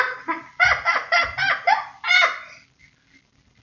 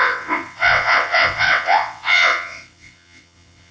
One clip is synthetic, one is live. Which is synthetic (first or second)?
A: second